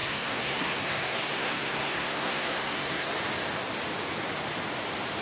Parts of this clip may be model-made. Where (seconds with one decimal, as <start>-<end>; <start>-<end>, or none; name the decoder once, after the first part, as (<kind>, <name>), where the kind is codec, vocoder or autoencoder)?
0.0-3.1 (codec, SNAC)